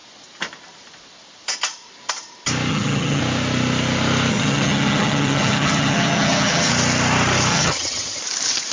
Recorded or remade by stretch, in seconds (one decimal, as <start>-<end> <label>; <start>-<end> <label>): 0.0-2.7 recorded; 2.7-3.2 remade; 3.2-4.3 recorded; 4.3-6.7 remade; 6.7-7.5 recorded; 7.5-8.2 remade; 8.2-8.7 recorded